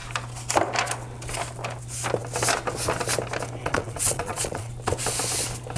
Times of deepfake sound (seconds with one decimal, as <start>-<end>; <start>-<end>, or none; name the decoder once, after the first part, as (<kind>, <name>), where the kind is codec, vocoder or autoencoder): 3.6-4.7 (vocoder, Vocos)